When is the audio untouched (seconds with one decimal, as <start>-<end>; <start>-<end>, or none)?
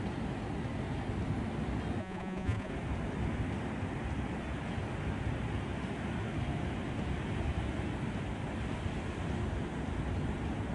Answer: 0.0-2.0; 2.7-10.7